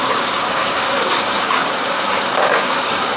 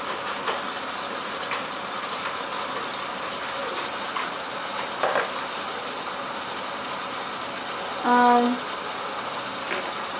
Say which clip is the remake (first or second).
first